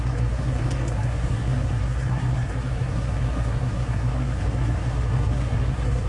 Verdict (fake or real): fake